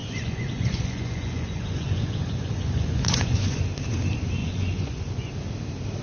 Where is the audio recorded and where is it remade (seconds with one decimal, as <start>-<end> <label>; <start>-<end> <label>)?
0.0-3.6 remade; 3.6-4.4 recorded; 4.4-5.3 remade; 5.3-6.0 recorded